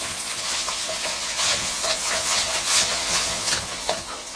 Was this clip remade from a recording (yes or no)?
yes